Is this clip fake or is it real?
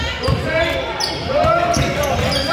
real